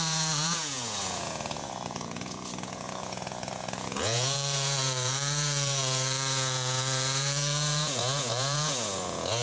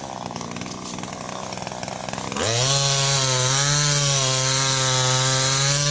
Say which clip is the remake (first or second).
first